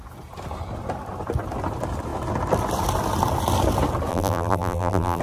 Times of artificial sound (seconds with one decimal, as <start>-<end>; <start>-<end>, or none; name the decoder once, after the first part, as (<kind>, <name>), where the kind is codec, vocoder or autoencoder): 4.1-5.2 (vocoder, BigVGAN v2)